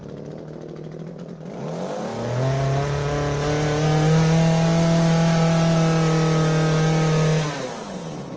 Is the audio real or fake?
real